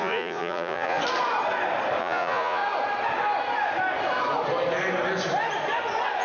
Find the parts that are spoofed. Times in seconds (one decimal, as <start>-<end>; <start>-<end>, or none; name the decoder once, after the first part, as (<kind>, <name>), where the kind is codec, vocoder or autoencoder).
0.0-1.0 (vocoder, Vocos); 2.0-2.6